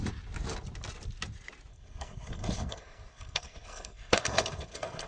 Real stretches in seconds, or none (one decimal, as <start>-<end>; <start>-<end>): 0.0-1.7